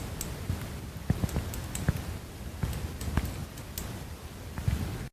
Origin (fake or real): real